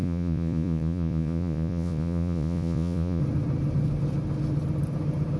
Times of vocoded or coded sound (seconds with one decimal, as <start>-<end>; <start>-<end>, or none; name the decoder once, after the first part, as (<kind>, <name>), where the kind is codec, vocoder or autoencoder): 0.0-3.2 (vocoder, Vocos)